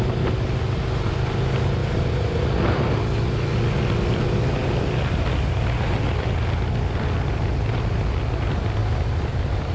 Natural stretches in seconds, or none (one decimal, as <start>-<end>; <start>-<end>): 0.0-1.8; 2.7-4.6; 6.0-7.5; 8.2-8.8